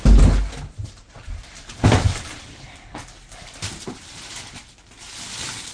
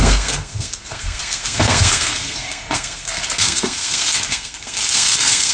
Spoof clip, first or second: second